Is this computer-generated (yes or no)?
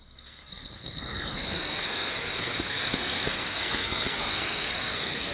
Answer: yes